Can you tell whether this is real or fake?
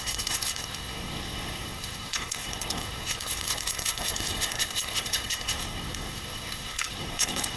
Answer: fake